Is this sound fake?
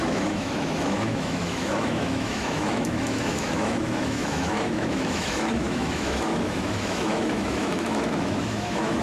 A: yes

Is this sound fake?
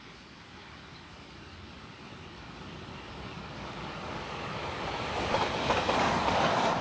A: yes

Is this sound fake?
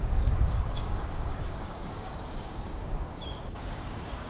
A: yes